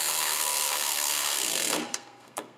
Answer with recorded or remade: remade